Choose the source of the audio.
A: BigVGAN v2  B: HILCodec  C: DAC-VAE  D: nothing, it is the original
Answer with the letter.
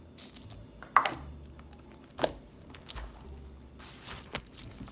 D